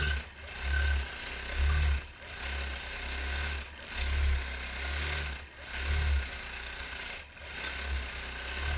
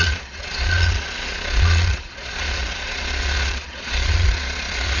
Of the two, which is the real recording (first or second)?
first